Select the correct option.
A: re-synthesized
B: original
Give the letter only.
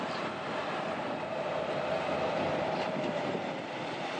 A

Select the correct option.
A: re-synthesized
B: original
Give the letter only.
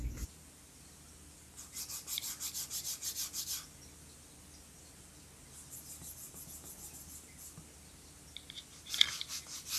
B